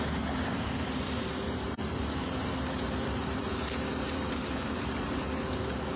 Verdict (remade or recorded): remade